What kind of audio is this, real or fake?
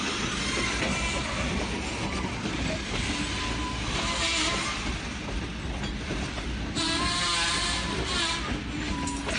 real